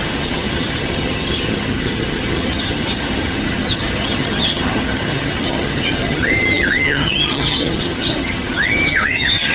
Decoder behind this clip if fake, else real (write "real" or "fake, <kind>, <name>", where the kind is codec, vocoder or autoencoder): fake, vocoder, HiFi-GAN